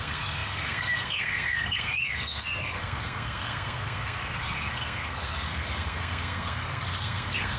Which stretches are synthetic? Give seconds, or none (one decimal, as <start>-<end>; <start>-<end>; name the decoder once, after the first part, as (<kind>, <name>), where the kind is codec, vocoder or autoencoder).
0.0-7.6 (codec, SNAC)